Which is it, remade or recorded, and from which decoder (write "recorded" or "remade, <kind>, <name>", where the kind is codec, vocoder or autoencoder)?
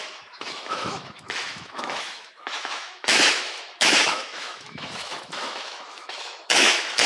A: remade, autoencoder, DAC-VAE